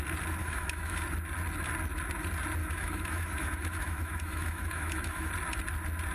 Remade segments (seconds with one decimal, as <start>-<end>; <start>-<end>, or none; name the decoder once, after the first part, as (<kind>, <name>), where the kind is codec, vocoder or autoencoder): 0.4-1.0 (autoencoder, DAC-VAE); 2.6-5.3